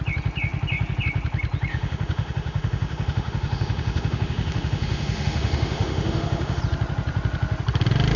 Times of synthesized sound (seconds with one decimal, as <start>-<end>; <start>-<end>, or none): 1.7-6.6